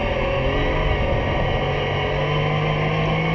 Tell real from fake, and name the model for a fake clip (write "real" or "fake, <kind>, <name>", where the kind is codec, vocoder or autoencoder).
real